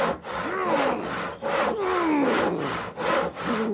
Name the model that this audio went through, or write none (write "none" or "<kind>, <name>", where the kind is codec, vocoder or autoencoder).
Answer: none